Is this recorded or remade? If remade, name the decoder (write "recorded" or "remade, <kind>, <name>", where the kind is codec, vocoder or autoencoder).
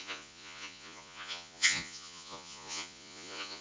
remade, vocoder, Vocos